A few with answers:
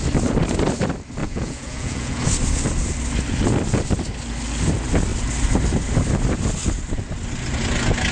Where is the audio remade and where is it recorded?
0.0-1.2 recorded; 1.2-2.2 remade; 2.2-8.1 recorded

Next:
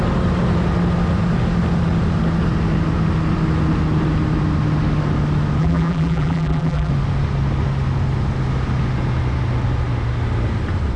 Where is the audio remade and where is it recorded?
0.0-5.6 recorded; 5.6-6.9 remade; 6.9-11.0 recorded

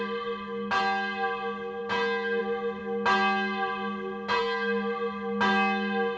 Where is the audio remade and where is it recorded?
0.0-6.2 recorded

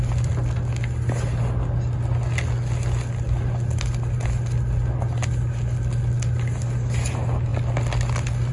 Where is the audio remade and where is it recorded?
0.0-8.5 recorded

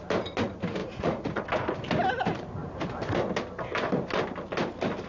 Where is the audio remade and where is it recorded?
0.0-0.8 recorded; 0.8-1.4 remade; 1.4-5.1 recorded

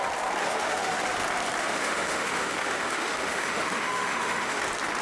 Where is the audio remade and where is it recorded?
0.0-0.4 recorded; 0.4-1.0 remade; 1.0-1.6 recorded; 1.6-4.6 remade; 4.6-5.0 recorded

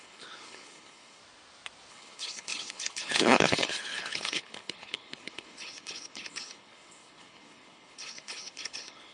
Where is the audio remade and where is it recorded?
0.0-1.2 remade; 1.2-1.9 recorded; 1.9-9.1 remade

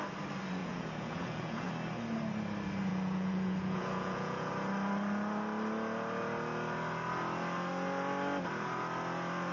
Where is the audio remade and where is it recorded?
0.0-0.6 recorded; 0.6-1.7 remade; 1.7-2.9 recorded; 2.9-4.5 remade; 4.5-9.5 recorded